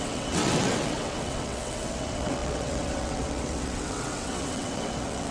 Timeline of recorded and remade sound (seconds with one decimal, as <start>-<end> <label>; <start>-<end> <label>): 0.0-5.3 remade

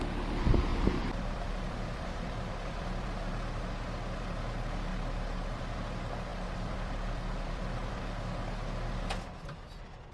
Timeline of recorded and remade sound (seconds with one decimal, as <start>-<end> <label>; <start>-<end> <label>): 0.0-0.7 recorded; 0.7-3.3 remade; 3.3-4.9 recorded; 4.9-5.6 remade; 5.6-6.3 recorded; 6.3-8.0 remade; 8.0-10.1 recorded

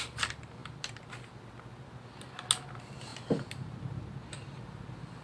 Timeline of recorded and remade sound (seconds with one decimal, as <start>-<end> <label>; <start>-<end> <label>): 0.0-5.2 recorded

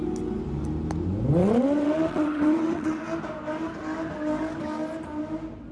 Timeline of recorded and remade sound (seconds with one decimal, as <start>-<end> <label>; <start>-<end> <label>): 0.0-1.4 recorded; 1.4-3.0 remade; 3.0-5.7 recorded

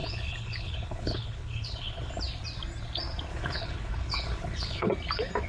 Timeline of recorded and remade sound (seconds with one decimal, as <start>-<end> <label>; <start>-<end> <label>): 0.0-2.1 remade; 2.1-3.3 recorded; 3.3-4.9 remade; 4.9-5.5 recorded

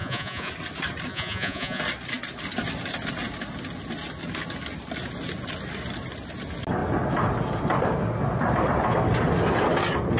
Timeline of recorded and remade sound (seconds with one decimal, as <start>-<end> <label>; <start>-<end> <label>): 0.0-0.5 remade; 0.5-1.1 recorded; 1.1-1.8 remade; 1.8-10.2 recorded

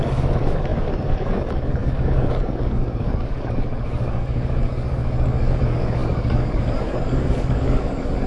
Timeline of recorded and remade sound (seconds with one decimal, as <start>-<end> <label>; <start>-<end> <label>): 0.0-8.3 remade

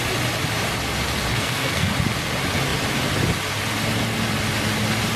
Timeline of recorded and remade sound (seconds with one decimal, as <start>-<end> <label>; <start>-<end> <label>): 0.0-1.3 recorded; 1.3-1.9 remade; 1.9-5.2 recorded